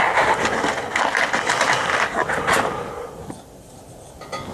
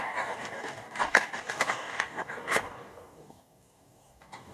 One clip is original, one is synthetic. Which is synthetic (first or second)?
second